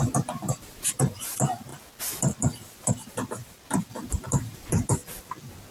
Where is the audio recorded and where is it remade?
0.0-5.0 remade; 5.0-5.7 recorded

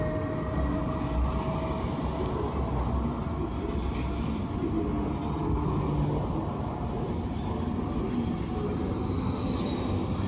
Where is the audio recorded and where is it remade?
0.0-10.3 recorded

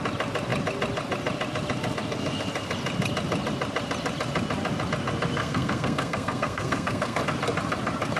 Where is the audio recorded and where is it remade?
0.0-5.4 recorded; 5.4-7.2 remade; 7.2-8.2 recorded

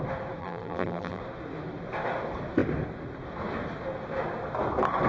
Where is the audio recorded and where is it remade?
0.0-0.4 recorded; 0.4-1.2 remade; 1.2-5.1 recorded

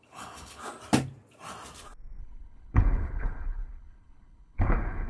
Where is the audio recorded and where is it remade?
0.0-0.6 remade; 0.6-2.2 recorded; 2.2-5.1 remade

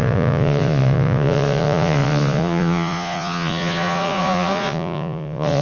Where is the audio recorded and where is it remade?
0.0-5.6 remade

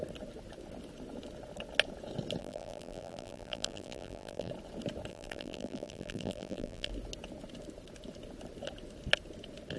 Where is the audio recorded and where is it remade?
0.0-2.4 recorded; 2.4-4.5 remade; 4.5-5.1 recorded; 5.1-6.9 remade; 6.9-9.8 recorded

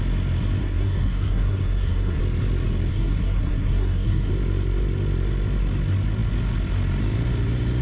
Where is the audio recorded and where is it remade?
0.0-0.6 recorded; 0.6-2.2 remade; 2.2-2.9 recorded; 2.9-4.3 remade; 4.3-7.8 recorded